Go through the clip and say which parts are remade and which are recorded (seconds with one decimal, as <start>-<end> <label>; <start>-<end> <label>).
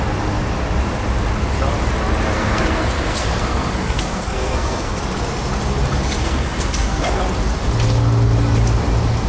0.0-2.3 recorded; 2.3-5.0 remade; 5.0-6.2 recorded; 6.2-7.2 remade; 7.2-9.3 recorded